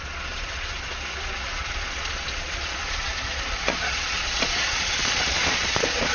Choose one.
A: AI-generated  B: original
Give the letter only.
A